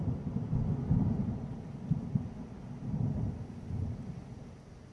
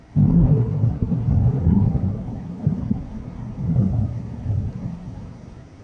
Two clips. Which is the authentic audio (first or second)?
first